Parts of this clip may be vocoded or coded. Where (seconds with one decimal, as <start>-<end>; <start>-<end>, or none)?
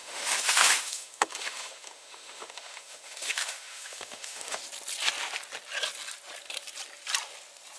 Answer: 0.0-4.6